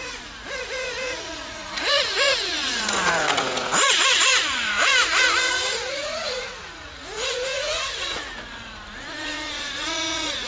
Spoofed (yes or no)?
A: yes